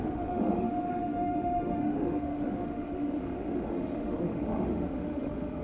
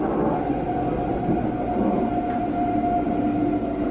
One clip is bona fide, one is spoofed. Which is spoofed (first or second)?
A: first